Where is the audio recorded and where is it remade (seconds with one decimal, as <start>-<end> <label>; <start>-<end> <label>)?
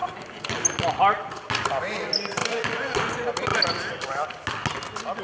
0.0-5.2 recorded